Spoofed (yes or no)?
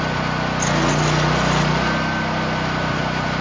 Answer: no